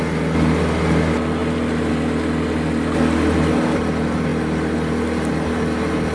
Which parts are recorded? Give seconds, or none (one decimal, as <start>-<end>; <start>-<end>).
0.0-6.1